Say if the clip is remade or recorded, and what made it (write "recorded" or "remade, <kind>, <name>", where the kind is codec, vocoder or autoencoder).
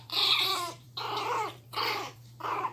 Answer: remade, vocoder, BigVGAN v2